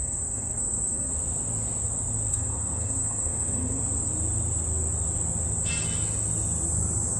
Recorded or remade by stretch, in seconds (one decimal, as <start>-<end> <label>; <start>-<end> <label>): 0.0-1.1 remade; 1.1-2.3 recorded; 2.3-3.8 remade; 3.8-7.2 recorded